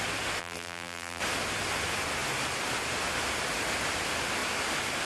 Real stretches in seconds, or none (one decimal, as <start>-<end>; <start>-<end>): 0.0-0.4; 1.2-5.0